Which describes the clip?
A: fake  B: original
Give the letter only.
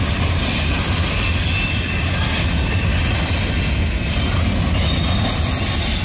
B